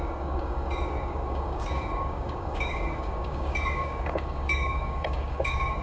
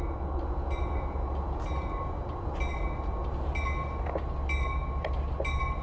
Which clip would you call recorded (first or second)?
second